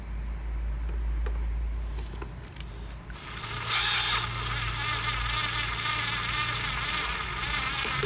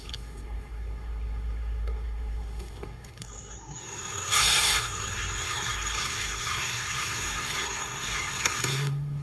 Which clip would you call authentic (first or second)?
first